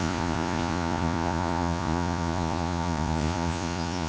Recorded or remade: remade